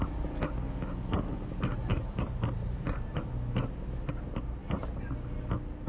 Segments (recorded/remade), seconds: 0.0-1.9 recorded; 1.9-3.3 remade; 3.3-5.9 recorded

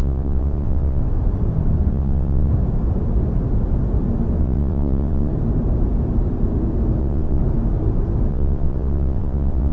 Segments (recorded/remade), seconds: 0.0-1.0 remade; 1.0-1.9 recorded; 1.9-2.5 remade; 2.5-4.4 recorded; 4.4-5.3 remade; 5.3-7.0 recorded; 7.0-7.4 remade; 7.4-8.3 recorded; 8.3-9.7 remade

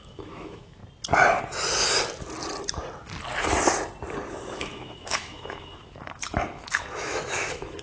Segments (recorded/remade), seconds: 0.0-0.8 remade; 0.8-4.3 recorded; 4.3-7.8 remade

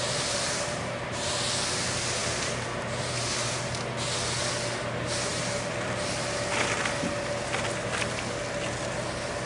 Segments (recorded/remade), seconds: 0.0-9.5 recorded

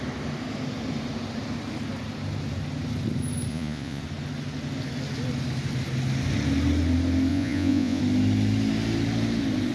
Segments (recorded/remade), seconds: 0.0-3.5 recorded; 3.5-4.0 remade; 4.0-7.3 recorded; 7.3-8.0 remade; 8.0-9.7 recorded

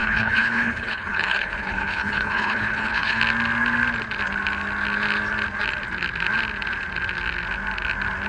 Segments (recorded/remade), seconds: 0.0-3.2 remade; 3.2-8.3 recorded

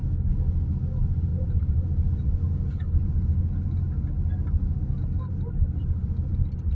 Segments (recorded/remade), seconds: 0.0-6.7 recorded

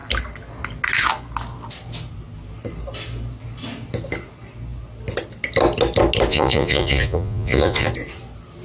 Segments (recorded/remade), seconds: 0.0-6.3 recorded; 6.3-7.9 remade; 7.9-8.6 recorded